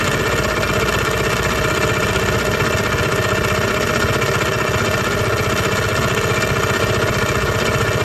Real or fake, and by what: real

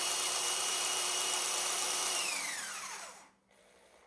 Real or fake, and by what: fake, vocoder, BigVGAN v2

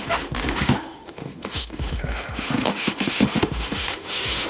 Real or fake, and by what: fake, autoencoder, DAC-VAE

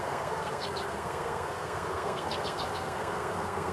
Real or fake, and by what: fake, codec, SNAC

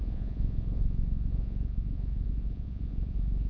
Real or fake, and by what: fake, vocoder, Vocos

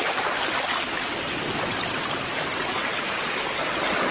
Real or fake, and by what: real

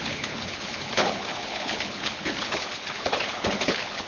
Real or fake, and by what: fake, codec, HILCodec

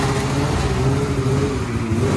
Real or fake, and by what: real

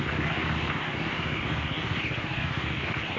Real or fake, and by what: fake, codec, DAC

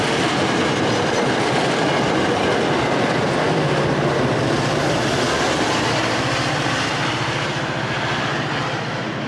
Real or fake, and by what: real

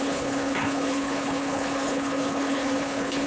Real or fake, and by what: fake, codec, HILCodec